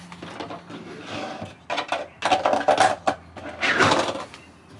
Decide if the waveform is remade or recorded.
recorded